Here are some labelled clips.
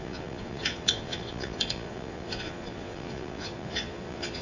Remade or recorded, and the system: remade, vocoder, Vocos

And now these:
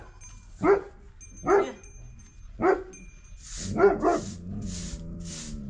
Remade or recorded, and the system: recorded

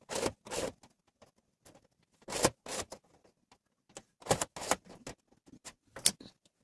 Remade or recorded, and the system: recorded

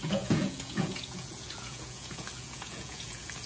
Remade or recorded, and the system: remade, vocoder, Vocos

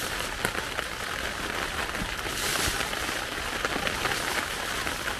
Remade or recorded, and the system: recorded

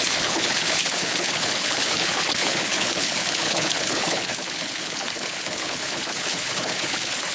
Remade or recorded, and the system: remade, codec, HILCodec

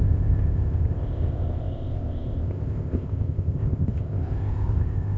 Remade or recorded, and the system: remade, codec, ZipCodec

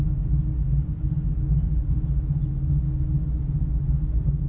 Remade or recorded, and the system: recorded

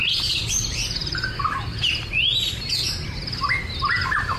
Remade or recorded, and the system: remade, vocoder, BigVGAN v2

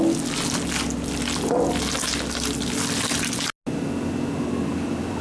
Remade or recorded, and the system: recorded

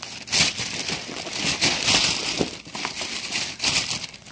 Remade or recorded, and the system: recorded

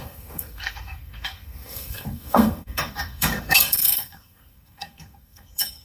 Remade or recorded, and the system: remade, codec, SNAC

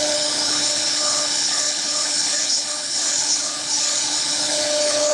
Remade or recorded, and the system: remade, codec, HILCodec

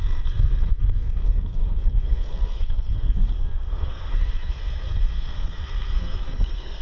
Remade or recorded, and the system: remade, codec, SNAC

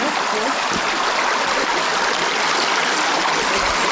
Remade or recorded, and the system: recorded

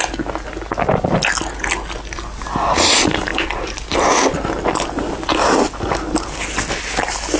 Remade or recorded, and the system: recorded